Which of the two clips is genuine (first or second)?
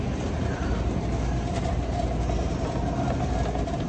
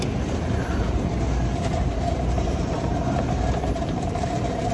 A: first